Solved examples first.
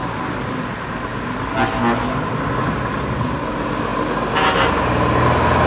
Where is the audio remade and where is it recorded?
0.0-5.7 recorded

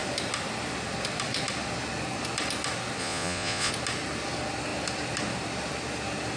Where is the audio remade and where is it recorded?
0.0-3.0 recorded; 3.0-3.7 remade; 3.7-6.4 recorded

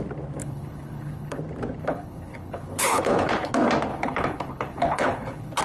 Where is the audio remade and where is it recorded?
0.0-0.4 recorded; 0.4-1.4 remade; 1.4-1.8 recorded; 1.8-3.5 remade; 3.5-3.9 recorded; 3.9-5.6 remade

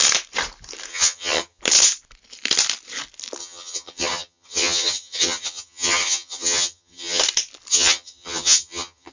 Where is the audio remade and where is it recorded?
0.0-0.9 recorded; 0.9-1.6 remade; 1.6-3.4 recorded; 3.4-7.2 remade; 7.2-7.7 recorded; 7.7-9.1 remade

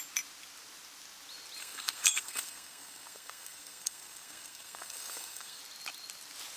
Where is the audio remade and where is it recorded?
0.0-1.6 recorded; 1.6-5.6 remade; 5.6-6.6 recorded

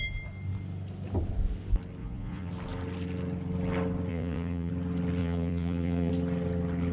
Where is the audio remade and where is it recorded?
0.0-2.0 recorded; 2.0-2.5 remade; 2.5-4.1 recorded; 4.1-4.7 remade; 4.7-5.2 recorded; 5.2-6.1 remade; 6.1-6.9 recorded

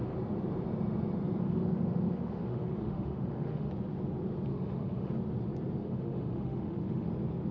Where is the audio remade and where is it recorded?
0.0-1.4 recorded; 1.4-3.7 remade; 3.7-4.5 recorded; 4.5-5.1 remade; 5.1-5.8 recorded; 5.8-7.1 remade; 7.1-7.5 recorded

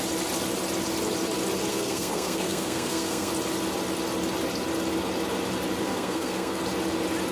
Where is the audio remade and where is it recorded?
0.0-1.7 recorded; 1.7-3.3 remade; 3.3-5.8 recorded; 5.8-6.6 remade; 6.6-7.3 recorded